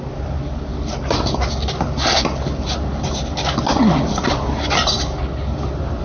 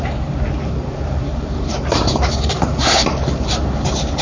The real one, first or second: first